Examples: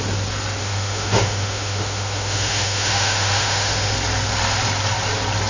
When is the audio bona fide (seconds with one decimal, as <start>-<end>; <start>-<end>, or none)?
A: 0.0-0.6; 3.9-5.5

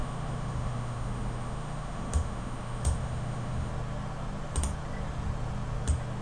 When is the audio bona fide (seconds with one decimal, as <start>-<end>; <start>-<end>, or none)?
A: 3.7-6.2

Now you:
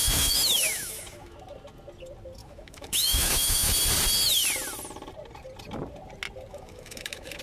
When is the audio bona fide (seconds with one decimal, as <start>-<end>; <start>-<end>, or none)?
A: 1.4-2.4; 3.7-6.5